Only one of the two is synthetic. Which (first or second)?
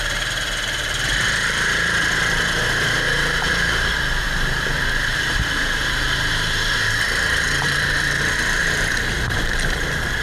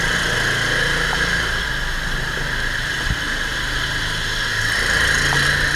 first